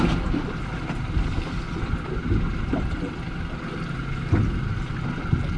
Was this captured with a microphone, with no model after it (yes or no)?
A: yes